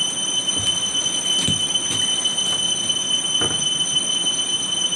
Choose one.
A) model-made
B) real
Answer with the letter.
B